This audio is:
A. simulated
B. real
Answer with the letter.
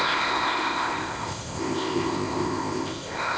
A